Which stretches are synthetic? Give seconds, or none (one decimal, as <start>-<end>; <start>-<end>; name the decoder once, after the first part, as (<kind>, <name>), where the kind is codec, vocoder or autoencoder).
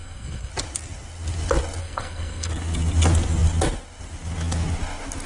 0.0-0.5 (codec, SNAC); 1.8-2.5